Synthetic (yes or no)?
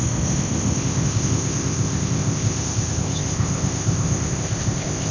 yes